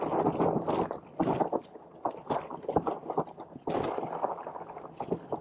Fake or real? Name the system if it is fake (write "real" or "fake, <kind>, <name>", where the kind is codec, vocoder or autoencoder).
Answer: real